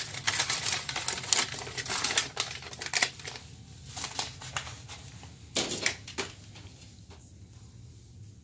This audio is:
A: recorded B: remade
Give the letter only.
A